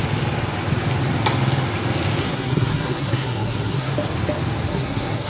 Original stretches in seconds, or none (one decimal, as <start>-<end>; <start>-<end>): 0.0-2.2; 3.9-4.7